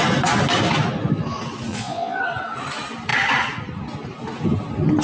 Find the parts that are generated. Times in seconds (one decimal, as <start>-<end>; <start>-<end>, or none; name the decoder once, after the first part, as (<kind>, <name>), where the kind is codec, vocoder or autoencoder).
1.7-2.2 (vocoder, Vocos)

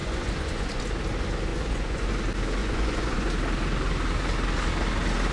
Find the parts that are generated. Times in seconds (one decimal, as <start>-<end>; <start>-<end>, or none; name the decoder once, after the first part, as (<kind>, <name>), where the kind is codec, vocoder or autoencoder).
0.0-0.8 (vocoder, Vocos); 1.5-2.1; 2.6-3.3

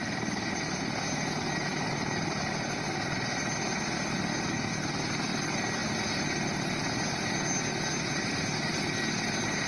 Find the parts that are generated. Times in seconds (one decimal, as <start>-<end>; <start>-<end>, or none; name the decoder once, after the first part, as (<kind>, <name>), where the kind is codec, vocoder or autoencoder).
none

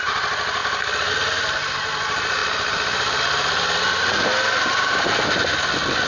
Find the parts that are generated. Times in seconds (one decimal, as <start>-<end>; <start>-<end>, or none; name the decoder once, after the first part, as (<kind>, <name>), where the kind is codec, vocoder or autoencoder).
2.4-5.0 (vocoder, BigVGAN v2)